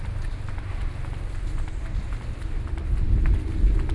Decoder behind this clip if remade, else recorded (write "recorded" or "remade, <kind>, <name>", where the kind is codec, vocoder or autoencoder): recorded